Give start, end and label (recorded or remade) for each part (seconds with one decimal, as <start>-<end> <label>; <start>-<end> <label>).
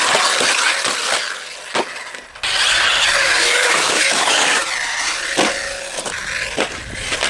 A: 0.0-3.2 recorded; 3.2-4.6 remade; 4.6-7.3 recorded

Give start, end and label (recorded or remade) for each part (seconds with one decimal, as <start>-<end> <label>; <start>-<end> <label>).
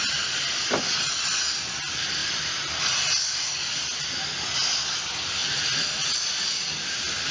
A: 0.0-7.3 recorded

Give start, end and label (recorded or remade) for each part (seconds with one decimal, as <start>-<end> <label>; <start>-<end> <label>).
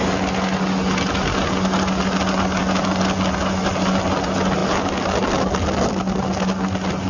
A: 0.0-7.1 recorded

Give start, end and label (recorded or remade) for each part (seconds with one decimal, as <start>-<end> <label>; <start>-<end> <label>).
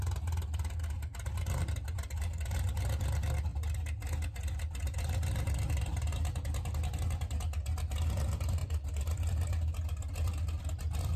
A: 0.0-11.2 recorded